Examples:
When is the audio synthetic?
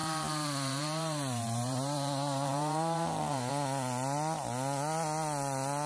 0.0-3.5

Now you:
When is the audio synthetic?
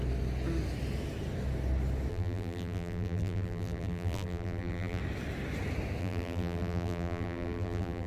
2.1-5.0; 6.0-8.1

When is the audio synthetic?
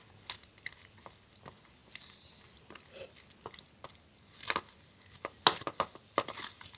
none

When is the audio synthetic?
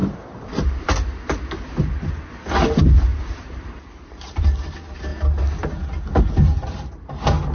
0.0-0.9; 3.1-4.4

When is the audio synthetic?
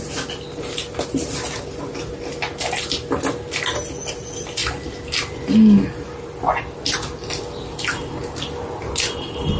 none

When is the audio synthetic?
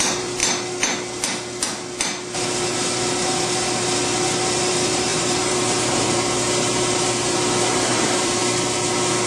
0.0-0.4; 4.6-8.4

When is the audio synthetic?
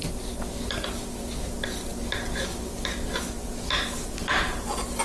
none